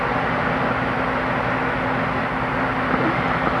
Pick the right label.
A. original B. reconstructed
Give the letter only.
A